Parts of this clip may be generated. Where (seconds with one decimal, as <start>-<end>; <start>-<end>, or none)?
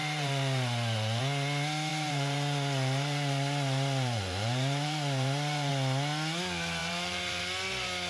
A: 0.0-1.2; 1.9-5.7; 6.8-7.4